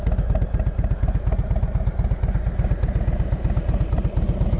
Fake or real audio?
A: real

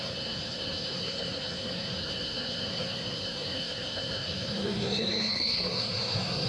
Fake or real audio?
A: fake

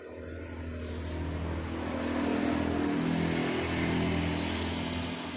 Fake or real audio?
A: real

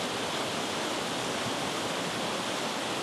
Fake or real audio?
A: real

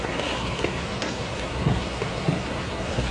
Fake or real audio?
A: fake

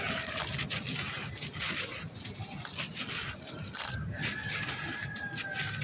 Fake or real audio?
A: real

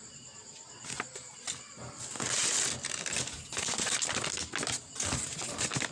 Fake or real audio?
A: real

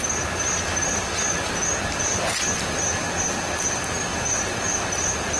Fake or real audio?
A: real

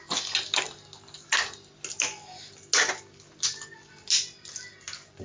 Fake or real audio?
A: real